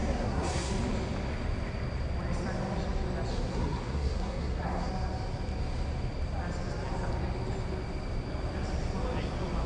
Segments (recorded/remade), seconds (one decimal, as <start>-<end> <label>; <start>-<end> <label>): 0.0-0.7 remade; 0.7-3.3 recorded; 3.3-4.9 remade; 4.9-9.7 recorded